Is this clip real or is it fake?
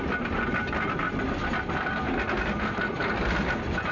real